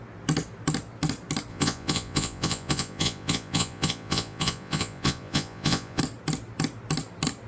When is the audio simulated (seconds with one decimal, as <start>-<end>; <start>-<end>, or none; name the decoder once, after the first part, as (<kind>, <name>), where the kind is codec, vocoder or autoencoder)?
1.5-6.0 (vocoder, Vocos)